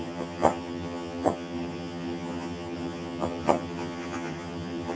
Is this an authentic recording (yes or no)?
no